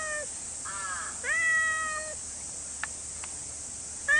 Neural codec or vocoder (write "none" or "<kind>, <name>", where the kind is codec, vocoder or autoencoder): none